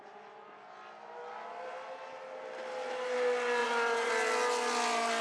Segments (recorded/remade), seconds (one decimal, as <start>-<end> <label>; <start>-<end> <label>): 0.0-3.6 recorded; 3.6-4.1 remade; 4.1-5.2 recorded